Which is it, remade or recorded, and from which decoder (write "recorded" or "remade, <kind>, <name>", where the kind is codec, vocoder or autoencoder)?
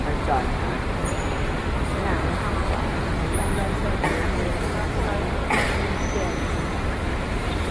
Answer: remade, vocoder, BigVGAN v2